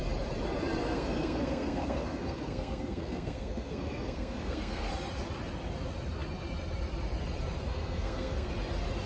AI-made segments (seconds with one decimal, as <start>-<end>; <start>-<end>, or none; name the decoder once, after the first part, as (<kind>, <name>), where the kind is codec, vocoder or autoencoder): 0.8-4.9 (codec, SNAC); 7.7-8.5